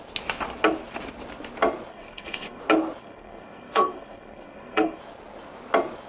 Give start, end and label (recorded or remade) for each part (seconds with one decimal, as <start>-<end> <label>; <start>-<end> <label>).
0.0-1.9 recorded; 1.9-2.6 remade; 2.6-3.0 recorded; 3.0-5.0 remade; 5.0-6.1 recorded